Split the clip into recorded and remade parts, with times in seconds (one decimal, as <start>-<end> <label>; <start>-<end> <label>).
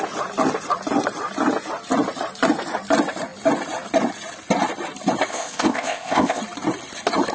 0.0-5.3 recorded; 5.3-6.4 remade; 6.4-7.3 recorded